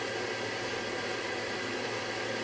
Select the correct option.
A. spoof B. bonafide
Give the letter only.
B